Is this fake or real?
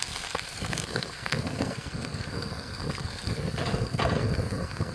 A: fake